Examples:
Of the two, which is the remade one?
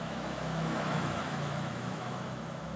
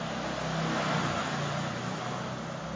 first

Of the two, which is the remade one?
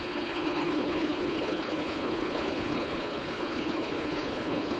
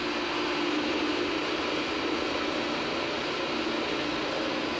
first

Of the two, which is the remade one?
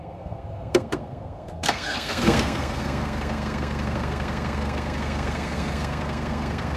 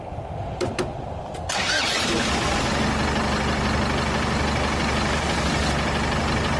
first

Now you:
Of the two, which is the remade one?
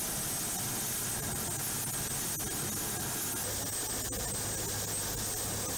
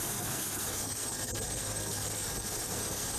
second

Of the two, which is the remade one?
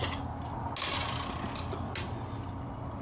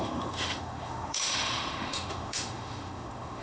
second